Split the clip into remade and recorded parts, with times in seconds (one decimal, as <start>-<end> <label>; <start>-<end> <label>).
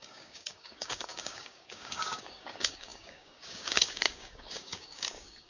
0.0-5.5 remade